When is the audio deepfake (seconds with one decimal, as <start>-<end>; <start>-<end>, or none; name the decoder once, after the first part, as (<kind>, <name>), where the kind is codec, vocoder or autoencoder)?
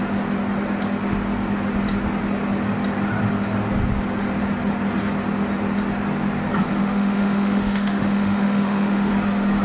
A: 6.8-9.1 (autoencoder, DAC-VAE)